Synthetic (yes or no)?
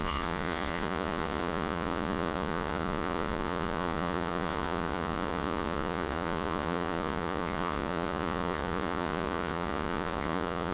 yes